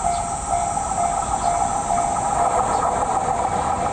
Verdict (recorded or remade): recorded